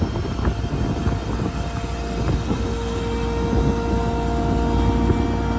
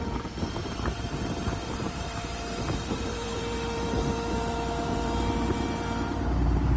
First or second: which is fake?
second